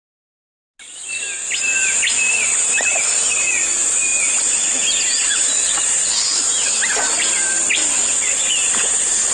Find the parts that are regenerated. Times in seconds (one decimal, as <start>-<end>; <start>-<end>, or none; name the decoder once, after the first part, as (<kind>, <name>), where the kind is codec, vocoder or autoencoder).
none